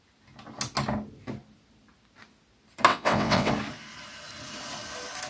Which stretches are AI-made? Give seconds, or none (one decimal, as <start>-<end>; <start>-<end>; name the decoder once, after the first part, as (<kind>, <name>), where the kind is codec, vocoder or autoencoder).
2.9-3.5 (vocoder, WaveNeXt)